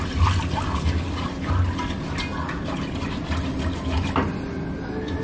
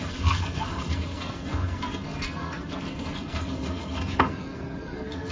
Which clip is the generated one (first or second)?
second